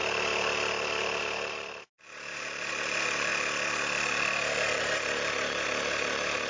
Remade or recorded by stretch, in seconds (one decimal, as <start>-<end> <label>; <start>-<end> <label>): 0.0-1.2 recorded; 1.2-3.3 remade; 3.3-4.8 recorded; 4.8-6.5 remade